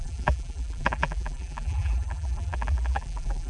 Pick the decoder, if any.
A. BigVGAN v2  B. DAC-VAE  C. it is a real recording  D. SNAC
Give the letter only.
A